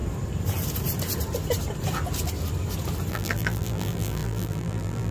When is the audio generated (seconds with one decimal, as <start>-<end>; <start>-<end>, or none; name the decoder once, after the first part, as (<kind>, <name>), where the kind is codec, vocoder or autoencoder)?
3.1-5.1 (vocoder, BigVGAN v2)